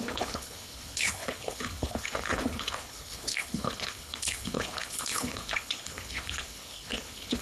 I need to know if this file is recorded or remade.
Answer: remade